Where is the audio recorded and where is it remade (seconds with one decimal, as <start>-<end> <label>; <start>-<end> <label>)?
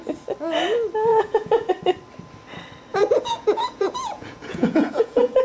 0.0-1.1 recorded; 1.1-1.7 remade; 1.7-2.9 recorded; 2.9-5.4 remade